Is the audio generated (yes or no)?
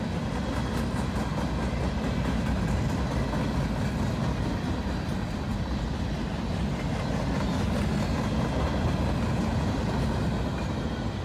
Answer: no